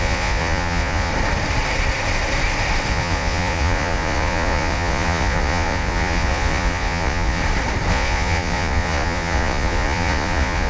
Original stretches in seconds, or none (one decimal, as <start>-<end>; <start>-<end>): 1.1-2.9; 7.4-7.9